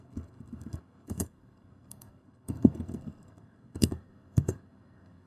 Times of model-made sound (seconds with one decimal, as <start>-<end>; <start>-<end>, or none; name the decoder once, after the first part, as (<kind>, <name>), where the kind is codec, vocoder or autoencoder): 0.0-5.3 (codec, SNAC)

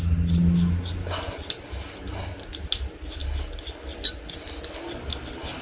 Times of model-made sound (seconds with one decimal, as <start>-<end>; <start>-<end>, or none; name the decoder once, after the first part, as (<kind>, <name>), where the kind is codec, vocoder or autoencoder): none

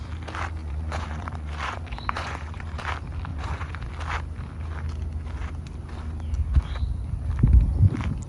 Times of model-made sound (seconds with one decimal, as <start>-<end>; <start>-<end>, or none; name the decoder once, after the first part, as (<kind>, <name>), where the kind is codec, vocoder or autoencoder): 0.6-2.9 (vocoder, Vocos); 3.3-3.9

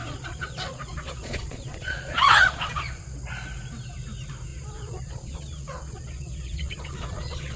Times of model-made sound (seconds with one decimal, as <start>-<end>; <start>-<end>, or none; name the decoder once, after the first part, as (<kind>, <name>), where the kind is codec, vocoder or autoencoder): 0.0-3.0 (vocoder, Vocos); 4.5-7.6